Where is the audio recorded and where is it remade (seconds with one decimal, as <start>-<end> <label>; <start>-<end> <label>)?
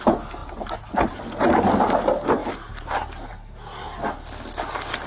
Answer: 0.0-2.4 recorded; 2.4-3.3 remade; 3.3-5.1 recorded